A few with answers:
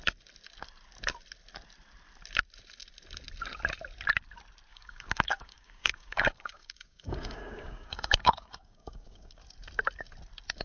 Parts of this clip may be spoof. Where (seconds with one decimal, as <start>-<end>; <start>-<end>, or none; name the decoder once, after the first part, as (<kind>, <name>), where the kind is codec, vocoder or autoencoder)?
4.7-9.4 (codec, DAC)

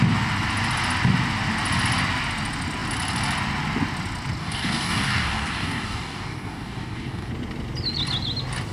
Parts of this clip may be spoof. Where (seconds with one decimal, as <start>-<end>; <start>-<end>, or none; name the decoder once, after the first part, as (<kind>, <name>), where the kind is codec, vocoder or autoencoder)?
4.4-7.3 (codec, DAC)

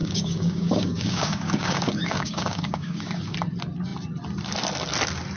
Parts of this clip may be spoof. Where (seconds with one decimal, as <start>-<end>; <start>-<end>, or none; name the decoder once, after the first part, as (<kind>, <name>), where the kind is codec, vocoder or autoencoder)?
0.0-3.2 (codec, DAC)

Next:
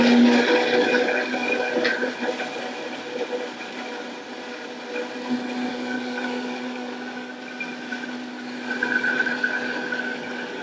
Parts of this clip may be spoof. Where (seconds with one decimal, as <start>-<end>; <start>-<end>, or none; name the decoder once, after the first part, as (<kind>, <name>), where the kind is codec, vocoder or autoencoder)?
0.0-1.9 (codec, DAC); 5.7-7.3; 9.1-10.6

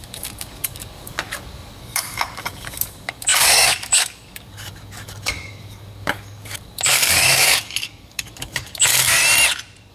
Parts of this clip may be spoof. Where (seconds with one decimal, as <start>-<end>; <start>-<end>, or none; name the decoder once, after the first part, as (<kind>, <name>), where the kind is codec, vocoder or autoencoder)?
0.0-9.2 (codec, DAC)

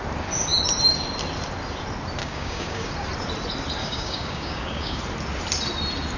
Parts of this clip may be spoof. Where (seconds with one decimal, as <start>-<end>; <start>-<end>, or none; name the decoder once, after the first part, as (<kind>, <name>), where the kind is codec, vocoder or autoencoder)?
2.2-2.9 (codec, DAC); 3.8-5.0